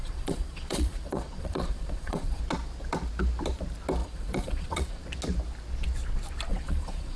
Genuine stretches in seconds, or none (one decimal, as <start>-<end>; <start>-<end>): 2.4-4.0; 5.0-6.5